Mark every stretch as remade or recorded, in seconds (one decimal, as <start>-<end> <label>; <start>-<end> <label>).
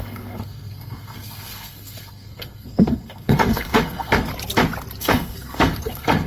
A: 0.0-4.3 remade; 4.3-5.0 recorded; 5.0-6.3 remade